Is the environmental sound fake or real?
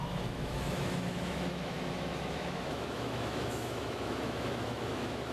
fake